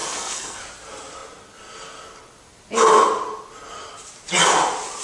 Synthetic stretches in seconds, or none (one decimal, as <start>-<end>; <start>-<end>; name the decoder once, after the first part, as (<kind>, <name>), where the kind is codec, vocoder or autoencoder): 0.0-0.6 (codec, SNAC)